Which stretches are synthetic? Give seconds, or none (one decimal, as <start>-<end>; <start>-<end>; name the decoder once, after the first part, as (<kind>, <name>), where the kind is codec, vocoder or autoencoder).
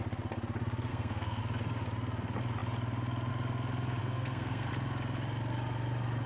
0.9-1.4 (codec, SNAC); 4.0-4.7